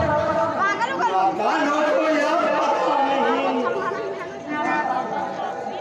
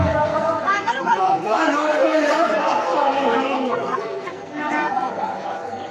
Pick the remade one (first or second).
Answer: second